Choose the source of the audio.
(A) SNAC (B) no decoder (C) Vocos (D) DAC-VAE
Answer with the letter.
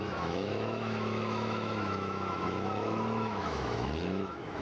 D